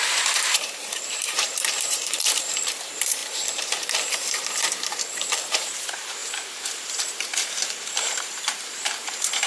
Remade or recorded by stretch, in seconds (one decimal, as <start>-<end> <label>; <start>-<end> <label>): 0.0-6.2 remade; 6.2-6.9 recorded; 6.9-9.5 remade